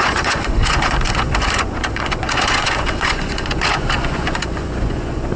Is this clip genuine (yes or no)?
no